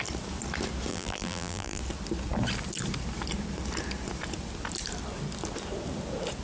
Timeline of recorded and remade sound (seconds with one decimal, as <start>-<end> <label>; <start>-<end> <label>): 0.0-0.9 recorded; 0.9-1.8 remade; 1.8-6.4 recorded